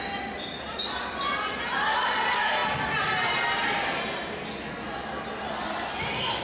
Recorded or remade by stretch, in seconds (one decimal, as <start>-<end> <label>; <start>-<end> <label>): 0.0-6.4 recorded